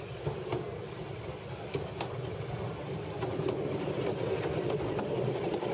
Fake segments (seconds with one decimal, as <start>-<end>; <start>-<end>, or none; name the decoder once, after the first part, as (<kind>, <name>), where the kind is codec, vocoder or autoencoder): none